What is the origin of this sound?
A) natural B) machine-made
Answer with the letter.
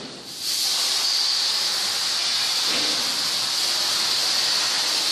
A